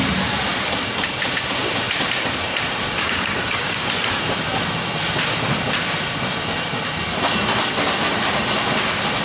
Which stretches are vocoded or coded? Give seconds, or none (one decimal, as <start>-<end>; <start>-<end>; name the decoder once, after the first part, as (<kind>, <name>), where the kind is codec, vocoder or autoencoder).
3.0-3.9 (codec, DAC)